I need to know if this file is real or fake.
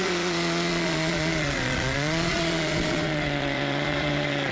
fake